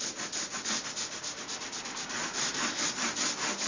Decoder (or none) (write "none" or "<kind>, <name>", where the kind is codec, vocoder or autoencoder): none